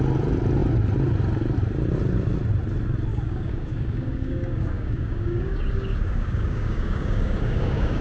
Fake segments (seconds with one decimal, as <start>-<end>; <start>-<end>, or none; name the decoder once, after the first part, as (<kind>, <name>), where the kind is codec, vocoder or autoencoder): 3.1-8.0 (codec, DAC)